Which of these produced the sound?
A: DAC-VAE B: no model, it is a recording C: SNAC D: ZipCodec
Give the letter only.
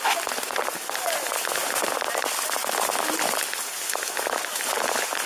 B